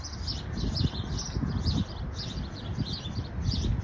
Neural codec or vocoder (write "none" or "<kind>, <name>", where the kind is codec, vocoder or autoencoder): vocoder, BigVGAN v2